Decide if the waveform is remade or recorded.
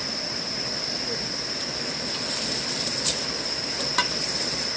recorded